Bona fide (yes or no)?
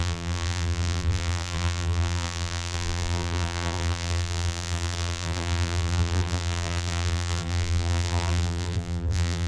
no